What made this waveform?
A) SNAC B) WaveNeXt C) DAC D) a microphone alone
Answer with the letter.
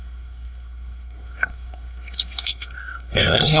A